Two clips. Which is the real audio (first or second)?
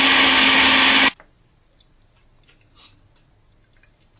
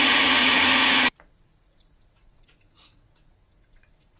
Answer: first